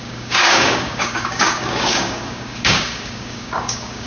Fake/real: fake